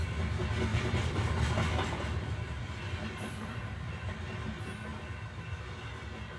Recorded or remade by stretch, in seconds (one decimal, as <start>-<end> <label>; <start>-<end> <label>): 0.0-0.7 recorded; 0.7-4.5 remade; 4.5-6.4 recorded